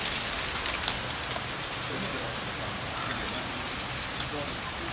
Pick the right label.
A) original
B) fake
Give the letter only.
A